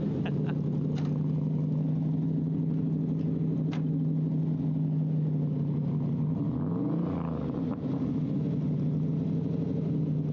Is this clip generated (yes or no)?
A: no